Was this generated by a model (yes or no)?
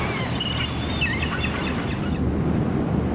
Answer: no